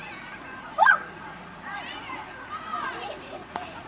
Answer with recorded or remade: remade